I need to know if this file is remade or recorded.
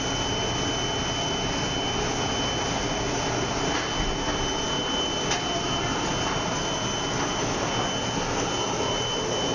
recorded